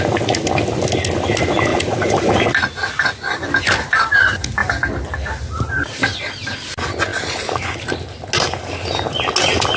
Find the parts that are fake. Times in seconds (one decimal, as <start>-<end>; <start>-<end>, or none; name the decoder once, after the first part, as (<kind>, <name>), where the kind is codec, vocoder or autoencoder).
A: 1.7-2.5 (vocoder, Vocos)